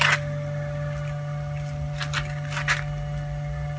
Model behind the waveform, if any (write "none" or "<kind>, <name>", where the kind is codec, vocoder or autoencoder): none